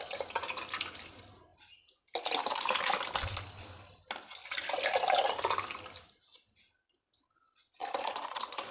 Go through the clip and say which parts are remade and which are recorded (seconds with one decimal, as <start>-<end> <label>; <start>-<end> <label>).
0.0-7.8 recorded; 7.8-8.7 remade